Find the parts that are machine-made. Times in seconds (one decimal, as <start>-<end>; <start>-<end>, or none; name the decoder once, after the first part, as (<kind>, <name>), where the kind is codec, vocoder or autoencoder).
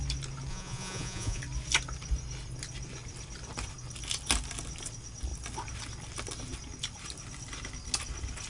0.5-1.4 (vocoder, Vocos)